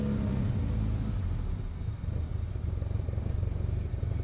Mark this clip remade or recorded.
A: recorded